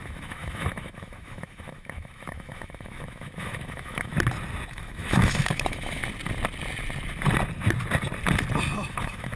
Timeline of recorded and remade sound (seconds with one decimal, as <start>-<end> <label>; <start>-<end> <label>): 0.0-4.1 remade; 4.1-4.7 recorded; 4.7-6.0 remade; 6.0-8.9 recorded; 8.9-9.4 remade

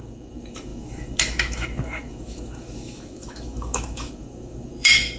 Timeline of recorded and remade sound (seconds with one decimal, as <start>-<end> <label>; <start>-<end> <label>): 0.0-5.2 remade

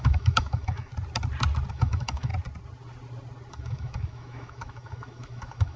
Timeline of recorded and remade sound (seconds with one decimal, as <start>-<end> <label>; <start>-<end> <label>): 0.0-0.9 remade; 0.9-1.7 recorded; 1.7-2.3 remade; 2.3-3.5 recorded; 3.5-5.8 remade